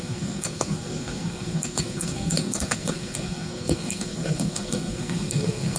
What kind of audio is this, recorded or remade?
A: remade